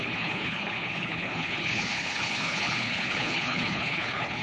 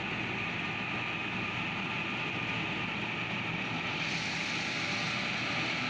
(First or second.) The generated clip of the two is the first